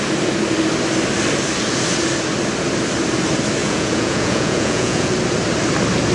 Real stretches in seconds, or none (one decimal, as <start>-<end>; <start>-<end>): 0.0-3.6; 5.1-6.1